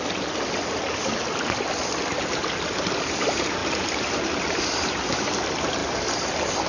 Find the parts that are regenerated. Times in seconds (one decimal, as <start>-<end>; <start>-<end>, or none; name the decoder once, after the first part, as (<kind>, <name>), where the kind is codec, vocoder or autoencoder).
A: 3.6-4.6 (vocoder, BigVGAN v2)